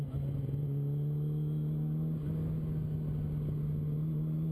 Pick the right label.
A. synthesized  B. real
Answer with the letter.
B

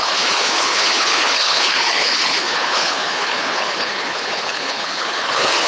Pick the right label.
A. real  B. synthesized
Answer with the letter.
B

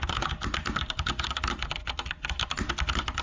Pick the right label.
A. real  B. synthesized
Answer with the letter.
A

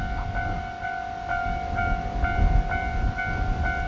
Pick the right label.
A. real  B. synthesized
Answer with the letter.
A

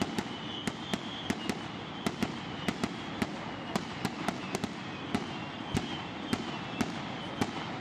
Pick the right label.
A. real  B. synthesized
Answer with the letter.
A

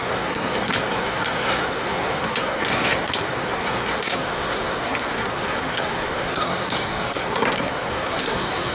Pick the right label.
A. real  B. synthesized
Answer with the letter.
B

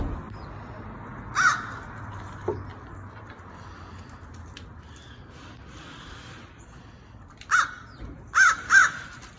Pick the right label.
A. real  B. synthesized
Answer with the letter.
A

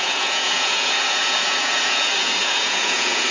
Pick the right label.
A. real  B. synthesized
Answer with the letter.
B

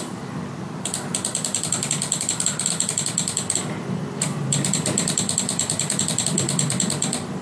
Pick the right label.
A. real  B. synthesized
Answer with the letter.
B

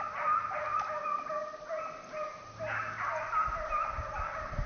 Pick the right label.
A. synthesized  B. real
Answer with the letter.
B